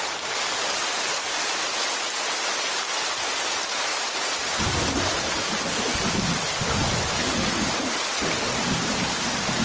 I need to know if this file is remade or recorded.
recorded